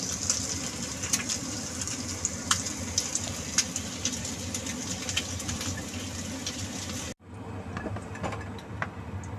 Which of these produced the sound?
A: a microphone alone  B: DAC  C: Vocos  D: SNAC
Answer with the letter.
A